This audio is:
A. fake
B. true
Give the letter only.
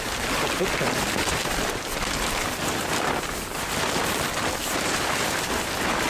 B